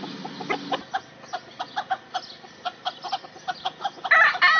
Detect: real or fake real